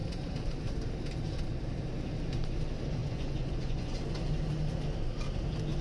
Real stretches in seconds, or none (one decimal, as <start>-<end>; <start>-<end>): 0.0-3.0; 4.0-5.8